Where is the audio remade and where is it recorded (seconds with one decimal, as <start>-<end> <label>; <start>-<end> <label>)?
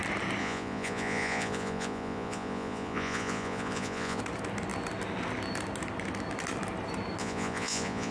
0.0-0.4 recorded; 0.4-4.2 remade; 4.2-7.2 recorded; 7.2-8.1 remade